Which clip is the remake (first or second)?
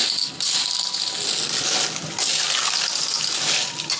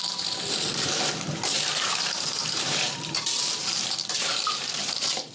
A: second